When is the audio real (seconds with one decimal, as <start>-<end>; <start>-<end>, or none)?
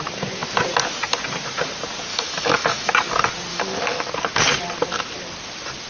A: 0.0-2.1; 2.9-3.5; 4.1-5.9